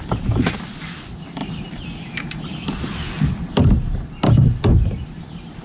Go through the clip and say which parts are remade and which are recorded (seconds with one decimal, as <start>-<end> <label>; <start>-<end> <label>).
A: 0.0-5.6 recorded